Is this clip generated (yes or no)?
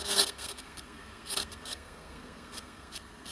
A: yes